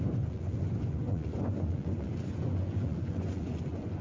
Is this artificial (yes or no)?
yes